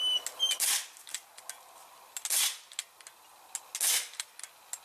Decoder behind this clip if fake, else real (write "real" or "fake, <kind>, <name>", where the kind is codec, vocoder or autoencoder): real